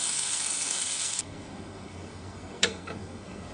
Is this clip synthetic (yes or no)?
yes